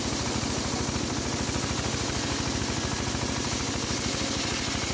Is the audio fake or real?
real